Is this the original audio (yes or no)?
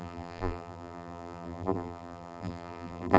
no